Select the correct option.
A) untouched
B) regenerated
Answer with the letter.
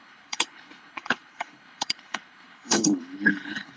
B